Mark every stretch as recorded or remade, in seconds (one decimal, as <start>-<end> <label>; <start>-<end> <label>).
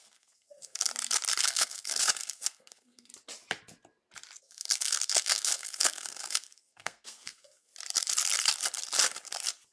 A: 0.0-0.9 remade; 0.9-1.4 recorded; 1.4-3.1 remade; 3.1-4.4 recorded; 4.4-7.7 remade; 7.7-9.7 recorded